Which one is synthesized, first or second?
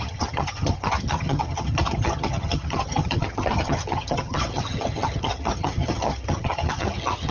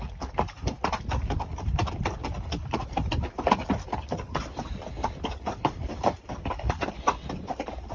first